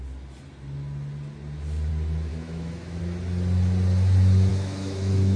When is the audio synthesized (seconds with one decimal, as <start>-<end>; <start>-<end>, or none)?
2.3-3.0; 4.5-5.4